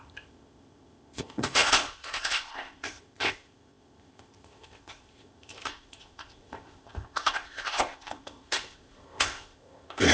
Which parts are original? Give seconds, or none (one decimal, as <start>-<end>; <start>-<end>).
none